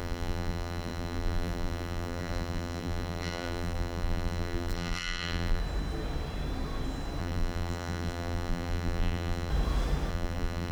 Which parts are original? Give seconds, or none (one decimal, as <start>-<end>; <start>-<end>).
5.6-7.2; 9.5-10.1